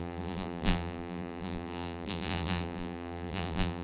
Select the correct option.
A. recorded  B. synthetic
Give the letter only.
B